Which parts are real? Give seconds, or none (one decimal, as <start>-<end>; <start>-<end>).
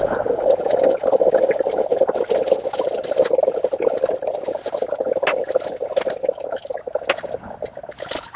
0.0-8.4